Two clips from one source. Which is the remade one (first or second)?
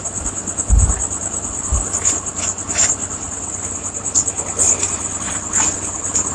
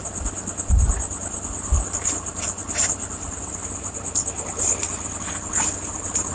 second